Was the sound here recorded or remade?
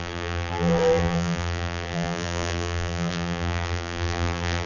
remade